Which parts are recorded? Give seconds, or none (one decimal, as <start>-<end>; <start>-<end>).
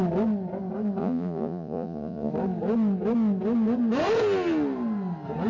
0.0-1.0; 2.3-5.5